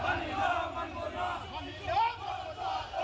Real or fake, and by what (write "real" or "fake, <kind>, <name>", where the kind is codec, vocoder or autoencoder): real